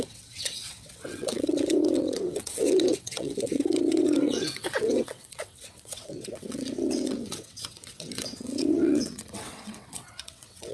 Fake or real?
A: fake